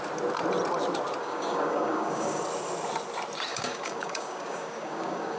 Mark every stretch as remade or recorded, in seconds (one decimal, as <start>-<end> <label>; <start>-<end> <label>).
0.0-1.2 recorded; 1.2-2.4 remade; 2.4-3.5 recorded; 3.5-5.4 remade